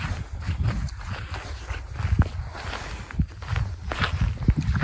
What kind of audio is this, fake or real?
real